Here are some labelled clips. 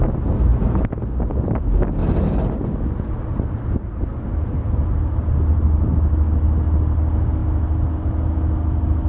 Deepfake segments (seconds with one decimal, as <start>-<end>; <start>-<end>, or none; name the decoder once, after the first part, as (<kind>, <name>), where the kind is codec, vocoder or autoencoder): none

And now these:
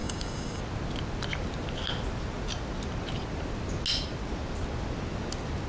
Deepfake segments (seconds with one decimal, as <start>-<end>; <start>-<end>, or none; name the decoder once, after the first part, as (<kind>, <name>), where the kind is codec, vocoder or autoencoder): 0.0-0.6 (codec, DAC)

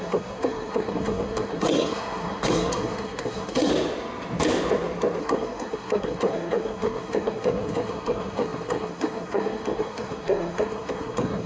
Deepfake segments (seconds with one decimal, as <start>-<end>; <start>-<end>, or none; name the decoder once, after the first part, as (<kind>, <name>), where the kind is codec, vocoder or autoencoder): 0.0-3.7 (codec, SNAC); 5.2-11.5